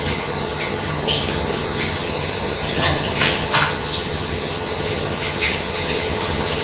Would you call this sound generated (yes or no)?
yes